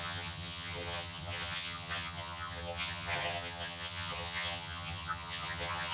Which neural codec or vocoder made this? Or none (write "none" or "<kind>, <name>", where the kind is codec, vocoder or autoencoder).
vocoder, HiFi-GAN